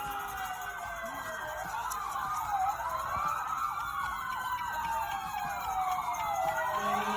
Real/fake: real